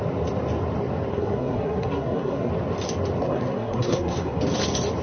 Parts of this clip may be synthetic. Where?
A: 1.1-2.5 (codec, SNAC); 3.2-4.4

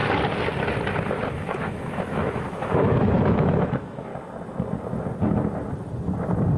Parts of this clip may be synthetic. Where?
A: 1.3-4.1 (autoencoder, DAC-VAE)

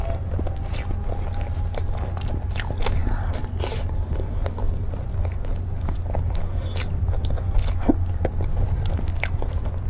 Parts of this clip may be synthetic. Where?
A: none

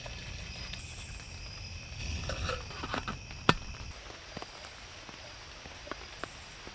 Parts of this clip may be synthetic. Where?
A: 2.0-2.5 (codec, HILCodec)

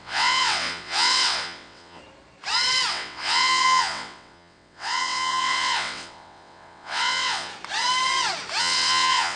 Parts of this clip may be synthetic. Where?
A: 0.0-2.0 (vocoder, WaveNeXt); 2.9-7.5; 8.6-9.4

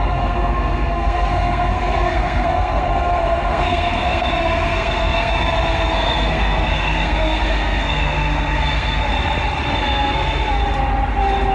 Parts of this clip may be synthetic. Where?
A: 0.0-9.1 (codec, SNAC); 9.7-10.6

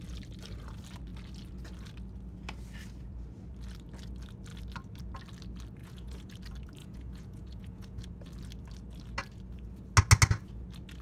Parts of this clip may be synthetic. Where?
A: 5.8-6.3 (vocoder, Vocos); 6.8-8.0